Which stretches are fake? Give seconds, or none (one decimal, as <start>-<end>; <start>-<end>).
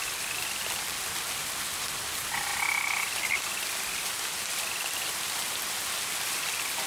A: none